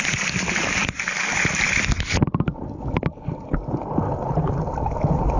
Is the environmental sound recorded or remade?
recorded